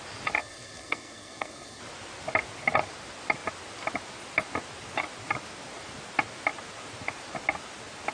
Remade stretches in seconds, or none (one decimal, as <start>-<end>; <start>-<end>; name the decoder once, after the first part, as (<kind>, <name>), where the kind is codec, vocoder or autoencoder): 0.4-1.8 (codec, SNAC)